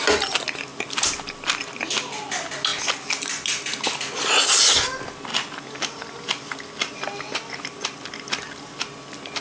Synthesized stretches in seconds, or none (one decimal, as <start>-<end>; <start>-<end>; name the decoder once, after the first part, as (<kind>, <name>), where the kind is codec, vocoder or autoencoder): none